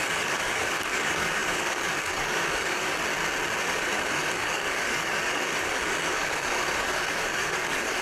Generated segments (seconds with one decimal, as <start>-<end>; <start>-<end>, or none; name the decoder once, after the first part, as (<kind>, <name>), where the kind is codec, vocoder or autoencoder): 0.0-3.0 (codec, DAC); 3.6-8.0